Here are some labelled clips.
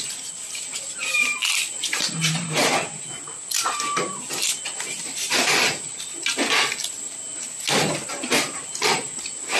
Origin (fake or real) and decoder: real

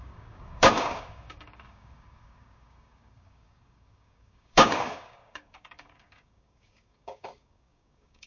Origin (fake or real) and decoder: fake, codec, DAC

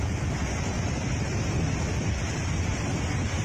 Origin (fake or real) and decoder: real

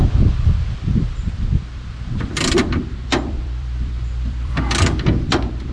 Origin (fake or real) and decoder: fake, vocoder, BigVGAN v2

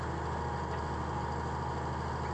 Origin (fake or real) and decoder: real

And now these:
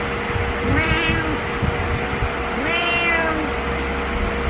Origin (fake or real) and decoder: real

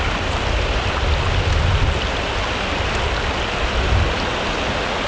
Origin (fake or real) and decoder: real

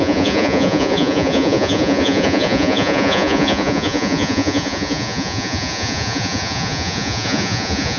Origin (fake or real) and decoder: fake, vocoder, Vocos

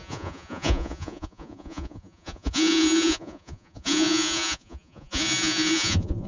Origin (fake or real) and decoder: fake, vocoder, Vocos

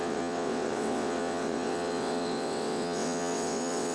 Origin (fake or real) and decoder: fake, vocoder, WaveNeXt